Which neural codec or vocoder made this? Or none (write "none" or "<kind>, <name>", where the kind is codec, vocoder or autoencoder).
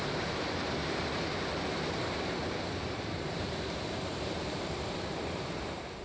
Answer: vocoder, BigVGAN v2